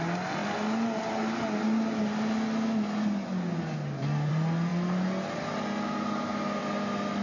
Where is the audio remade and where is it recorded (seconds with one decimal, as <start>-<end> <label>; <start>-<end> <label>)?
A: 0.0-7.2 recorded